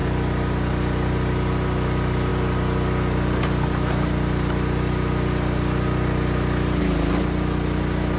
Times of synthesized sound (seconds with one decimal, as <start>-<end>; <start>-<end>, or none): none